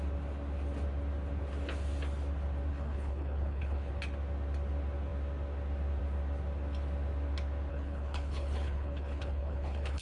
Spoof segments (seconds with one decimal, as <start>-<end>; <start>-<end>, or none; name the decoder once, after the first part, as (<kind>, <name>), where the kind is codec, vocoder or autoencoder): 2.7-3.9 (codec, HILCodec); 7.7-10.0